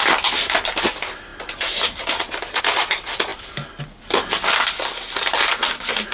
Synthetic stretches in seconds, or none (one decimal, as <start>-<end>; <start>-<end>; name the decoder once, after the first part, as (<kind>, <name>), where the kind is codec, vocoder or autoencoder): none